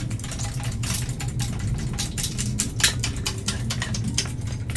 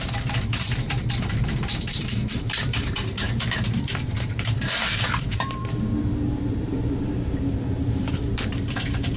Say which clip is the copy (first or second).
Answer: second